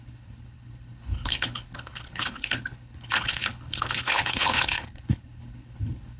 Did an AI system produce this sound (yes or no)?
yes